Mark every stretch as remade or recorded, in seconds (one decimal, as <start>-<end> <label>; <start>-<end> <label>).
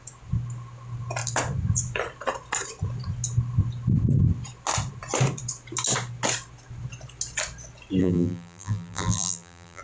0.0-8.0 recorded; 8.0-9.8 remade